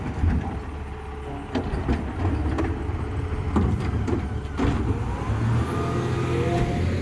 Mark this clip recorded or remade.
recorded